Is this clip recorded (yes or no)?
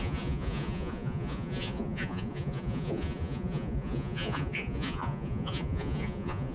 no